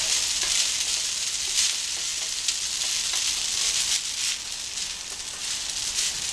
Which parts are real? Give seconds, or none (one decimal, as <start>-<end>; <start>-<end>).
0.0-6.3